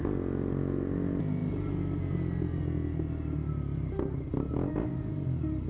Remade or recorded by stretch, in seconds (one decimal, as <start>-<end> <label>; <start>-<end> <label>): 0.0-5.7 recorded